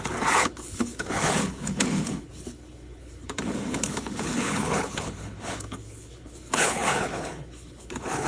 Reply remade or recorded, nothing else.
remade